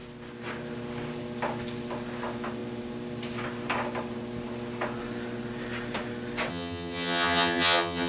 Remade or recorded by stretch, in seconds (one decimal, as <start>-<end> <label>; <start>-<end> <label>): 0.0-6.5 recorded; 6.5-8.1 remade